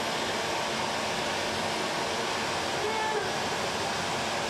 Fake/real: real